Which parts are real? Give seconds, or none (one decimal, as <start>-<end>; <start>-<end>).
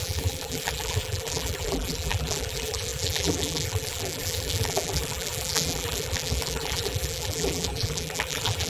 none